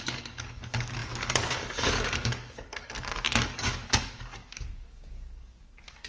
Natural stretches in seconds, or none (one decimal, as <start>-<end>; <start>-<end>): none